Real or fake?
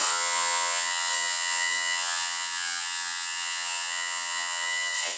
fake